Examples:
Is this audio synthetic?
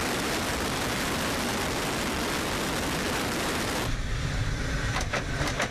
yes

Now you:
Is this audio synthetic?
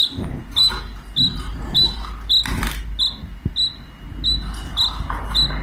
no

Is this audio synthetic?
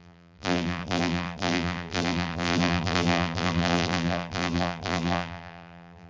yes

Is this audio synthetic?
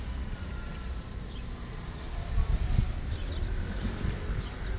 no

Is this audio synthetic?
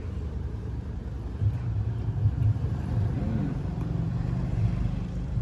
yes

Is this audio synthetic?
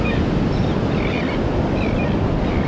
no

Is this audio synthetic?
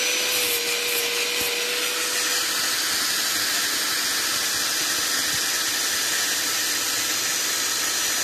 no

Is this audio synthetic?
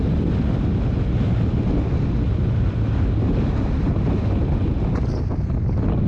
no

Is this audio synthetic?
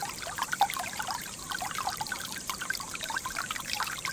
yes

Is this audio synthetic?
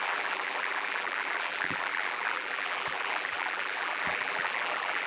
yes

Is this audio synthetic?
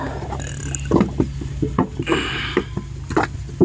no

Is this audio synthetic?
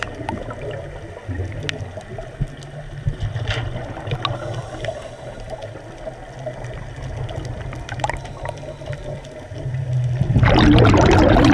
no